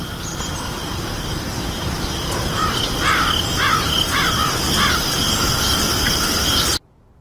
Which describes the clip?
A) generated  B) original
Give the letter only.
B